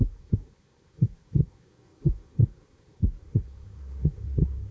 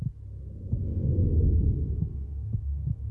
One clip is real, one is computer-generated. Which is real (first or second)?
second